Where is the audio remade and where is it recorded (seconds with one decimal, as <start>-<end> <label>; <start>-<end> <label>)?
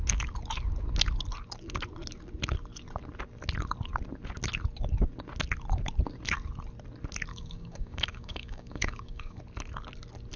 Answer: 0.0-7.3 recorded; 7.3-9.4 remade; 9.4-10.4 recorded